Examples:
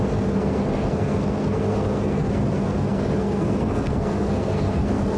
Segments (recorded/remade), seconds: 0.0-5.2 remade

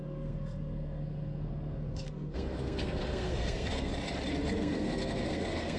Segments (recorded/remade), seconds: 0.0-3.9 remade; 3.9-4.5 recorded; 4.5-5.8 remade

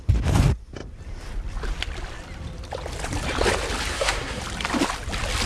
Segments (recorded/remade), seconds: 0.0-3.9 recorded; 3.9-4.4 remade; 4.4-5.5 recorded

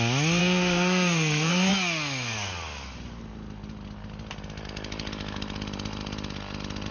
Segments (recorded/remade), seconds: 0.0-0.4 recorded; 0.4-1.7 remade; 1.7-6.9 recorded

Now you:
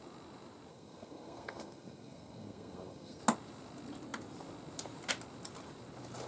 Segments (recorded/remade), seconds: 0.0-0.7 recorded; 0.7-3.2 remade; 3.2-6.3 recorded

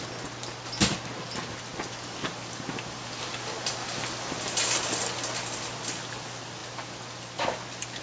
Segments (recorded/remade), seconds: 0.0-8.0 recorded